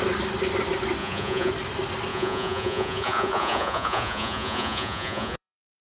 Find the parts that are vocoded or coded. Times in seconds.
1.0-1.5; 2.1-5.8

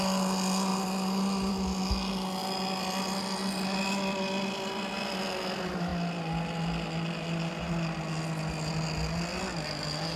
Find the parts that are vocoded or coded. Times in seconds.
none